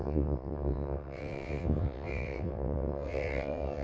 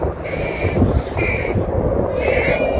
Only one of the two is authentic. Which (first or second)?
second